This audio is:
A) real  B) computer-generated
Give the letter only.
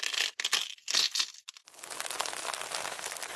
A